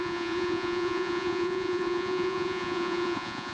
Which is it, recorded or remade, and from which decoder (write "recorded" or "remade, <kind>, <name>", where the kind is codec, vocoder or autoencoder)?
remade, vocoder, Vocos